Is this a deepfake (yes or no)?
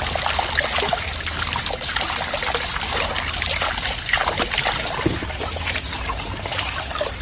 no